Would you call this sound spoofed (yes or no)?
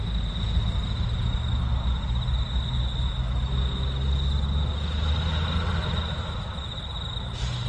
no